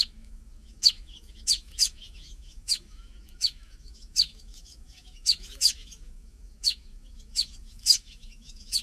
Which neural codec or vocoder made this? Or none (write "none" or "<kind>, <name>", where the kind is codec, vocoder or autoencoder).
autoencoder, DAC-VAE